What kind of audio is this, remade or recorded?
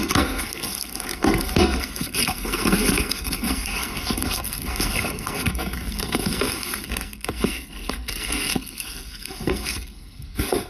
remade